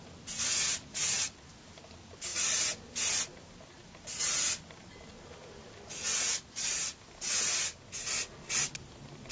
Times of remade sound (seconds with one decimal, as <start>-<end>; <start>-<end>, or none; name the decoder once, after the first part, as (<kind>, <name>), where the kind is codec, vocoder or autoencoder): none